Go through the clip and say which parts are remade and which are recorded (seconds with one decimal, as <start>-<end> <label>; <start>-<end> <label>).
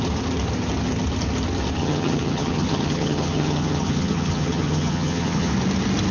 0.0-1.8 recorded; 1.8-5.5 remade; 5.5-6.1 recorded